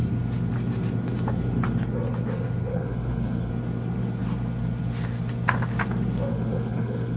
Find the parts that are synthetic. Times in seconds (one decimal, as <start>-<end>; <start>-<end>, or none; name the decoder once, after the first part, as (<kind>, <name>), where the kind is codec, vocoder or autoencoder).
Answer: 2.7-3.5 (codec, HILCodec); 6.3-7.2